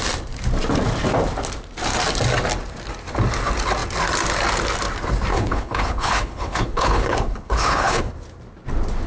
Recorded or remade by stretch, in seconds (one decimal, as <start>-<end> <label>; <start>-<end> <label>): 0.0-5.3 recorded; 5.3-8.1 remade; 8.1-9.1 recorded